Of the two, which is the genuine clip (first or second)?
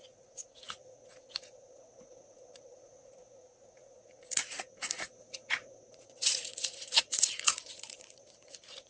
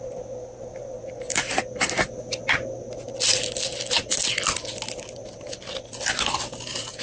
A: second